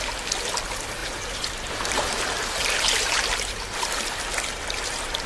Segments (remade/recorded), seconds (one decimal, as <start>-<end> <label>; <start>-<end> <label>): 0.0-1.0 recorded; 1.0-3.5 remade; 3.5-5.3 recorded